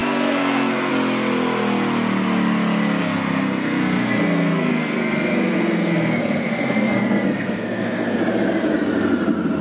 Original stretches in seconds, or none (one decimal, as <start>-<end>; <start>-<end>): 0.9-3.0; 8.2-9.6